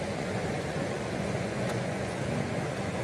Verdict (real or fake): fake